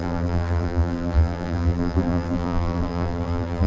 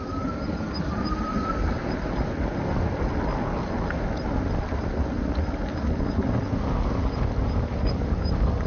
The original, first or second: second